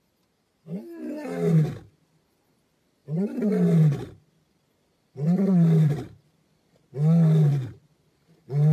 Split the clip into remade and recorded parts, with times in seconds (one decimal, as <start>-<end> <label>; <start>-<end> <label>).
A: 0.0-8.7 recorded